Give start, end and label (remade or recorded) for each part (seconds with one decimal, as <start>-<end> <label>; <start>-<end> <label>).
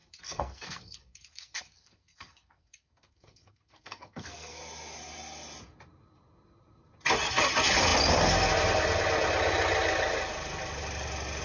0.0-4.6 remade; 4.6-11.4 recorded